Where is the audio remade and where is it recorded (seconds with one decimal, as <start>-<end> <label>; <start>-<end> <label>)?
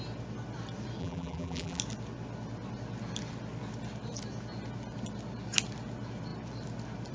0.0-1.0 recorded; 1.0-1.8 remade; 1.8-7.1 recorded